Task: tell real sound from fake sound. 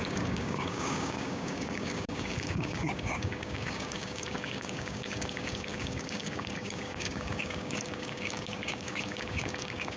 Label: fake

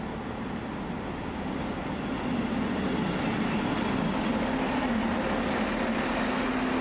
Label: real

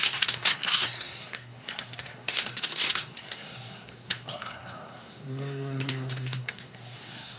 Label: fake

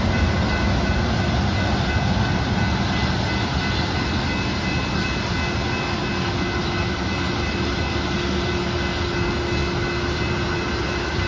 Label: real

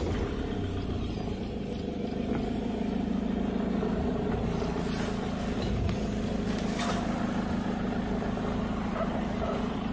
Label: real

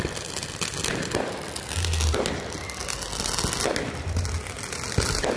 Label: real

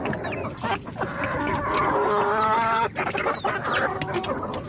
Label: real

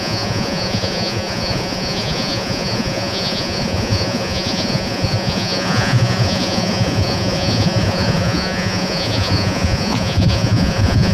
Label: fake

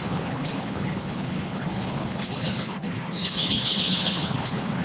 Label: fake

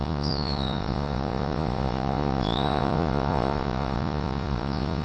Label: fake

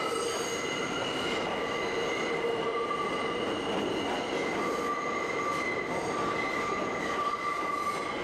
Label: real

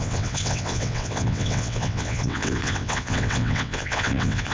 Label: fake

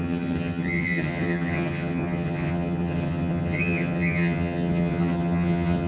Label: fake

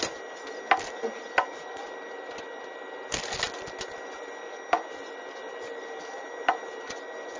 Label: real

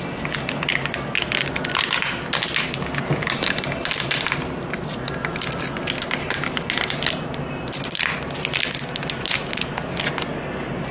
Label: real